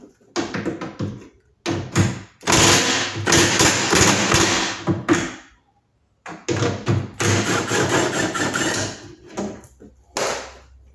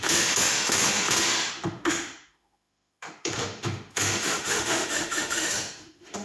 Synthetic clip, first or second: second